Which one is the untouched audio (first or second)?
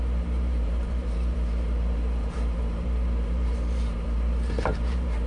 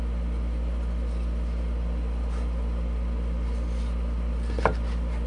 second